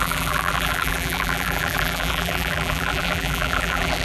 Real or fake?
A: fake